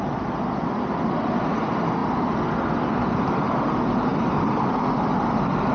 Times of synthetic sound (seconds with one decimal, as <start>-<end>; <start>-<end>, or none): none